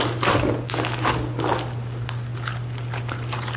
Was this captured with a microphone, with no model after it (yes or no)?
yes